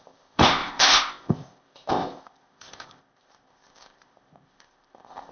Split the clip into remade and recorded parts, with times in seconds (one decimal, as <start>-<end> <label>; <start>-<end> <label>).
0.0-5.3 remade